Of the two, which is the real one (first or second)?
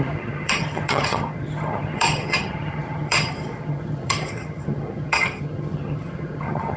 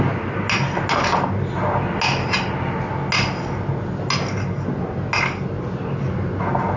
second